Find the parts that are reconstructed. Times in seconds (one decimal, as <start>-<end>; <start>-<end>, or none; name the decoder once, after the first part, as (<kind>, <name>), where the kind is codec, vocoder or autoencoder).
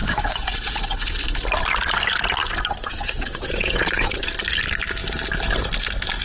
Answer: 0.0-1.2 (vocoder, WaveNeXt); 2.8-4.2